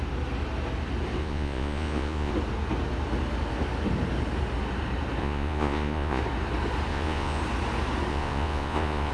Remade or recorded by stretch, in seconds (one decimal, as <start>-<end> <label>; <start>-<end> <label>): 0.0-1.2 recorded; 1.2-2.3 remade; 2.3-5.2 recorded; 5.2-6.2 remade; 6.2-6.9 recorded; 6.9-7.4 remade; 7.4-8.1 recorded; 8.1-9.1 remade